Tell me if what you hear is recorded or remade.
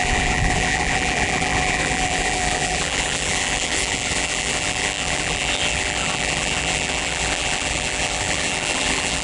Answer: remade